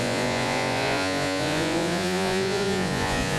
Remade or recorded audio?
remade